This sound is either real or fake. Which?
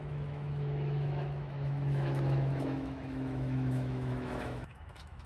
fake